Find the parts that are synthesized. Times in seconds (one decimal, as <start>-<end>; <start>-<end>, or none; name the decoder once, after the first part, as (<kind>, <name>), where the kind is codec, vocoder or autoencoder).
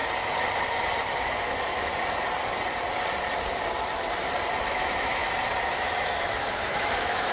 1.2-1.9 (autoencoder, DAC-VAE); 4.7-5.2; 5.7-7.3